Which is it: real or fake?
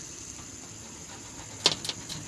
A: real